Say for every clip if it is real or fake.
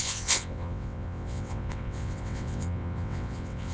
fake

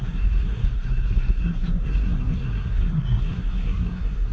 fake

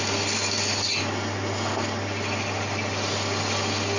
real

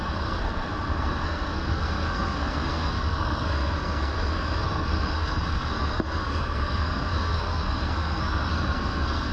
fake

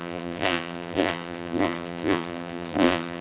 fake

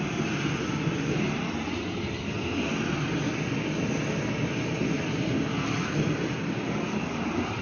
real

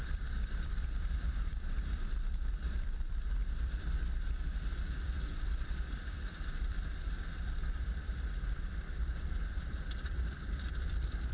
fake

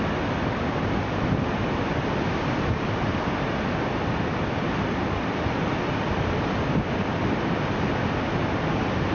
real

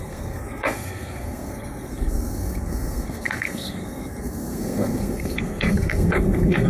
fake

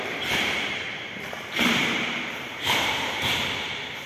fake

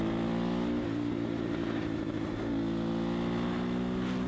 real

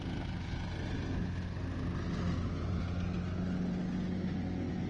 real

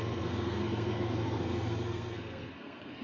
fake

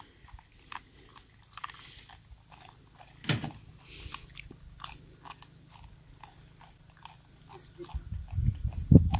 real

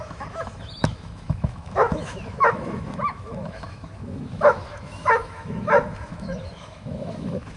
fake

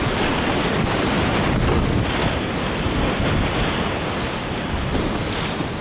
real